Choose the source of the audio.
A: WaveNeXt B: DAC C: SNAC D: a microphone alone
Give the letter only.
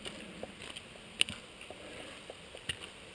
D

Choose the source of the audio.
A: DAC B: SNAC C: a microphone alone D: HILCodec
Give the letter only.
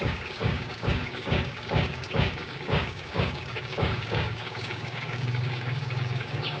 A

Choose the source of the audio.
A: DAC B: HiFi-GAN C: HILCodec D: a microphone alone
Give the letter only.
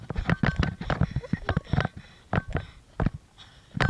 D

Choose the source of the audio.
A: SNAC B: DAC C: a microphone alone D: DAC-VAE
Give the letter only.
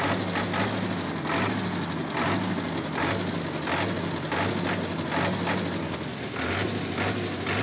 C